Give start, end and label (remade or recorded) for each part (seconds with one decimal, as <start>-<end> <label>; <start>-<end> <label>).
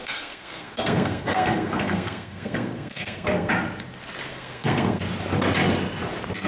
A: 0.0-3.5 remade; 3.5-4.3 recorded; 4.3-5.0 remade; 5.0-6.5 recorded